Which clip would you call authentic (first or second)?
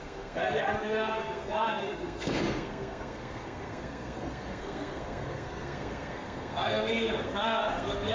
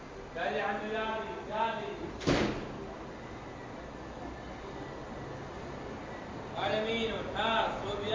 second